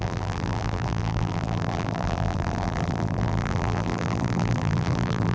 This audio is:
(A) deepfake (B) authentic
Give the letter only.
A